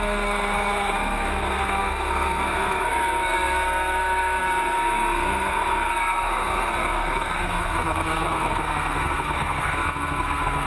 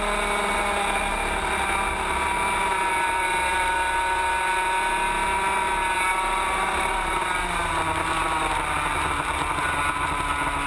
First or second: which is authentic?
second